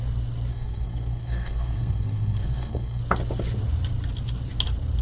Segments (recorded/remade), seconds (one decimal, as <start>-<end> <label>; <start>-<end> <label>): 0.0-0.5 recorded; 0.5-3.0 remade; 3.0-5.0 recorded